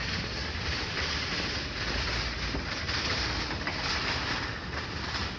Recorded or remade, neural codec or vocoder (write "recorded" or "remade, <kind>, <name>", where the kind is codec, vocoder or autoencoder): recorded